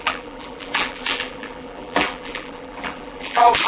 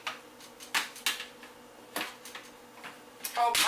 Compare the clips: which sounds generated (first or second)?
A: first